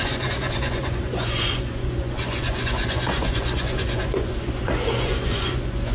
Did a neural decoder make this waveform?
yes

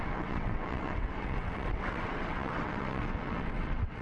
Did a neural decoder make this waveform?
yes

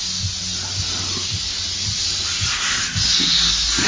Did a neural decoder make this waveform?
no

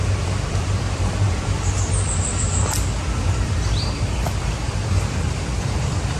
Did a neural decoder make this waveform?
yes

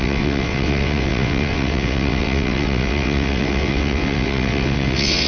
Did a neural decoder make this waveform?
yes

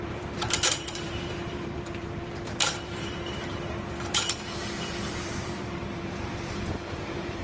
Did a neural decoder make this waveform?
yes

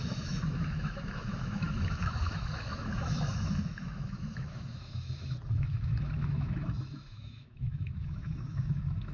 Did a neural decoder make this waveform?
yes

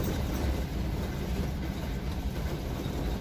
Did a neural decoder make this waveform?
no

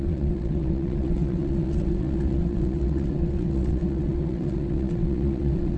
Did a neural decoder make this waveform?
yes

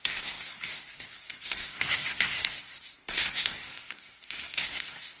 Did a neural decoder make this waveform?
yes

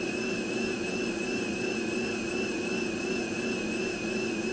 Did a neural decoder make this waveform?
no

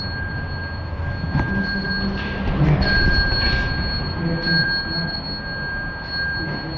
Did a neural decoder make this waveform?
no